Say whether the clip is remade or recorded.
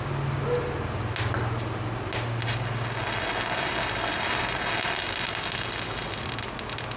recorded